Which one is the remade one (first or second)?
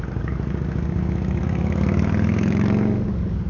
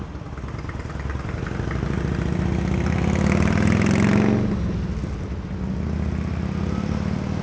first